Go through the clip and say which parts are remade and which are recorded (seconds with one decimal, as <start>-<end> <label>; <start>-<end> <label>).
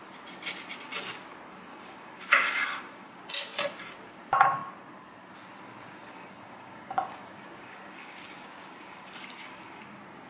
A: 0.0-1.7 recorded; 1.7-3.3 remade; 3.3-6.0 recorded; 6.0-9.8 remade; 9.8-10.3 recorded